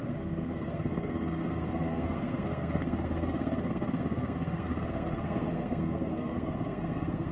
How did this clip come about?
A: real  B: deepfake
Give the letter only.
B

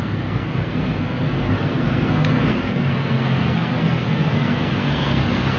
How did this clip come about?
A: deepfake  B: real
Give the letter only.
A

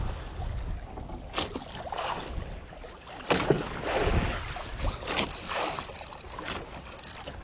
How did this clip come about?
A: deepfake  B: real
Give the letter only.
B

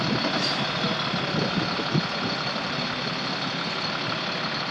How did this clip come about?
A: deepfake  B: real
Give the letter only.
B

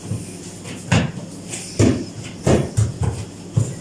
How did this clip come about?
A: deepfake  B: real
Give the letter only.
B